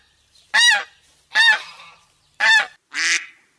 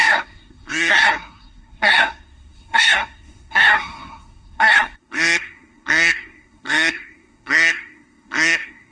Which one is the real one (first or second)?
first